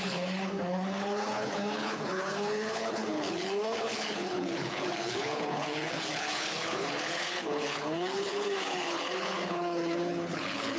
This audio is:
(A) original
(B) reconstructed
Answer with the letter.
B